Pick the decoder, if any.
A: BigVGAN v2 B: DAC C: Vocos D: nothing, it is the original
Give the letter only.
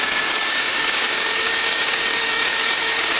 B